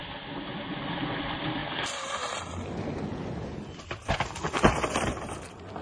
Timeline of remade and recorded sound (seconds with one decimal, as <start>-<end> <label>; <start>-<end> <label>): 0.0-5.8 recorded